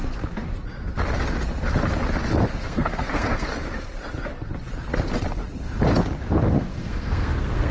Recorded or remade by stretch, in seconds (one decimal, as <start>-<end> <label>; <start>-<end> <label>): 0.0-2.6 recorded; 2.6-3.5 remade; 3.5-6.5 recorded; 6.5-7.7 remade